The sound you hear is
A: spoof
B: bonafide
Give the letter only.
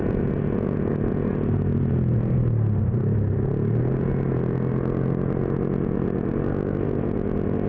B